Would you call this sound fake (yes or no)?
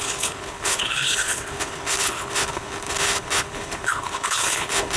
yes